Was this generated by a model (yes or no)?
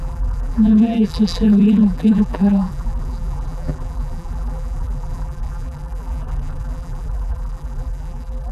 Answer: yes